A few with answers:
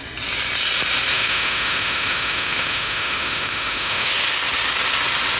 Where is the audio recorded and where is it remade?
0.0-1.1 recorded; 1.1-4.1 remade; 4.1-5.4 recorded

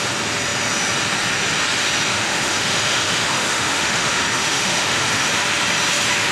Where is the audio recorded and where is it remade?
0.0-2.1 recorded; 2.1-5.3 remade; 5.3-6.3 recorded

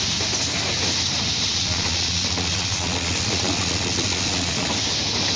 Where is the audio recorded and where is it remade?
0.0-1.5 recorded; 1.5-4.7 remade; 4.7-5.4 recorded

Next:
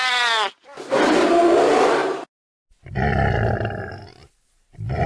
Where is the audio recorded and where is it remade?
0.0-5.1 recorded

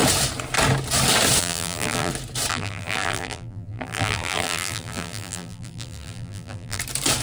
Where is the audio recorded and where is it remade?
0.0-1.4 recorded; 1.4-2.1 remade; 2.1-2.5 recorded; 2.5-6.8 remade; 6.8-7.2 recorded

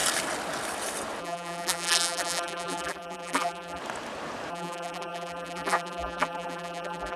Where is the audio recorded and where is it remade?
0.0-1.2 recorded; 1.2-3.8 remade; 3.8-4.5 recorded; 4.5-7.2 remade

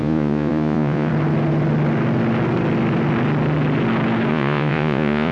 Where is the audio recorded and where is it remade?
0.0-1.1 remade; 1.1-4.3 recorded; 4.3-5.3 remade

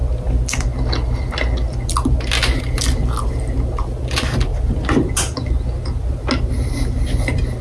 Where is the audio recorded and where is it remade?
0.0-7.6 recorded